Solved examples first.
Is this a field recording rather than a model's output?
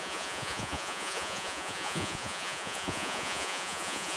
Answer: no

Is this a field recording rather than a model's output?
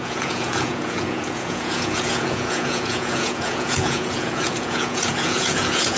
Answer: no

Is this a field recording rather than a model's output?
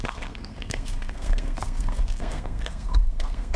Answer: no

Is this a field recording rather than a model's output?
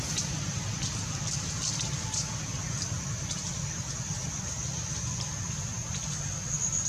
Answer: yes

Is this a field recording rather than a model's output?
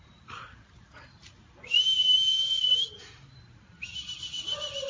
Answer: yes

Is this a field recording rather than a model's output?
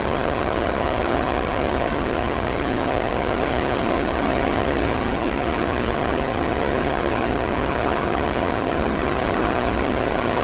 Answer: no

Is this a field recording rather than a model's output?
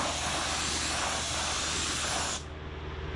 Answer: yes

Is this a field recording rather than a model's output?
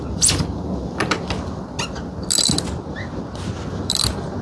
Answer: yes